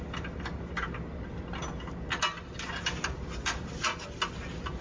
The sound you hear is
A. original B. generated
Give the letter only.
A